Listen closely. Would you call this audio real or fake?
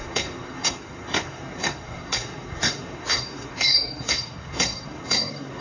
fake